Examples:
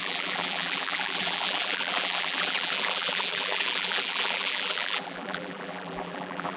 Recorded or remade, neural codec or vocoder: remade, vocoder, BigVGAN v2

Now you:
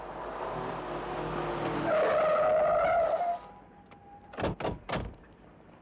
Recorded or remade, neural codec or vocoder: recorded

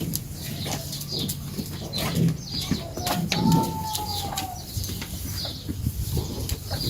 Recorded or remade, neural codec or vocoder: recorded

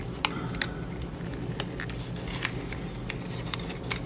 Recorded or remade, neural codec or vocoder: recorded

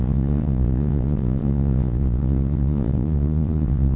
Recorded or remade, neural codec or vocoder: remade, vocoder, Vocos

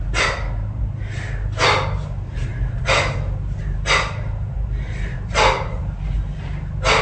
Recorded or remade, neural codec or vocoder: recorded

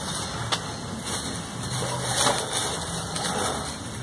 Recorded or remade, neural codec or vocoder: recorded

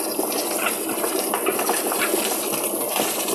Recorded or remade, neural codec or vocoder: recorded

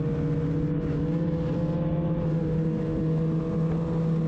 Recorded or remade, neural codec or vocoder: recorded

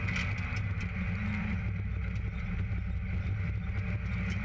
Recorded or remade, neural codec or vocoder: recorded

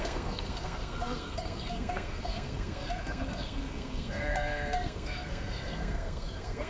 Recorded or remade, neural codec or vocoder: remade, codec, SNAC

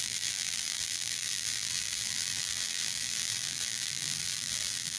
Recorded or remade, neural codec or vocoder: remade, vocoder, BigVGAN v2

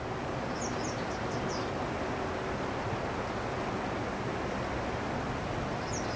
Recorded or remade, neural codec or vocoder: recorded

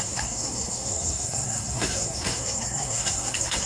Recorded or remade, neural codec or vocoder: remade, codec, SNAC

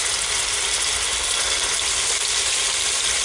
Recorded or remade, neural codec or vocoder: recorded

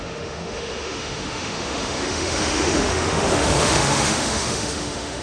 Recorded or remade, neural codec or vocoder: remade, autoencoder, DAC-VAE